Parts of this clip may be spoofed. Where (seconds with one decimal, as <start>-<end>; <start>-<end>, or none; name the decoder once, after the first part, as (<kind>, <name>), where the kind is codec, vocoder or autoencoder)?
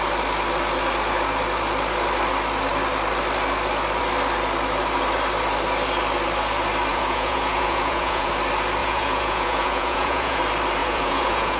6.9-8.3 (vocoder, Vocos); 8.8-10.4; 10.8-11.6